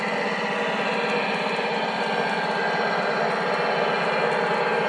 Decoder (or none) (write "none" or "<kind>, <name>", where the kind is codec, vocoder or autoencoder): none